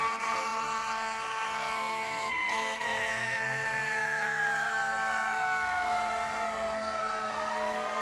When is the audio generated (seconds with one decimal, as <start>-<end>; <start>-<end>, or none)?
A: 0.0-8.0